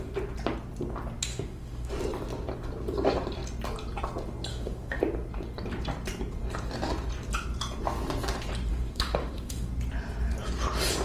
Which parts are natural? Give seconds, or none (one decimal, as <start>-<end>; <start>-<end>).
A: 0.0-1.3; 1.9-4.5; 5.0-8.7; 9.7-11.0